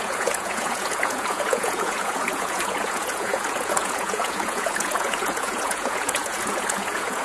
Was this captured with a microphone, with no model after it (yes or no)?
no